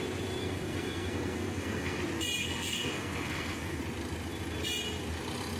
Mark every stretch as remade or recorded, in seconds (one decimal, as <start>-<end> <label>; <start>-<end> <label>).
0.0-0.4 recorded; 0.4-2.0 remade; 2.0-2.4 recorded; 2.4-3.8 remade; 3.8-5.6 recorded